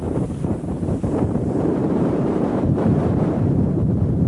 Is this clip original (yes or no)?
no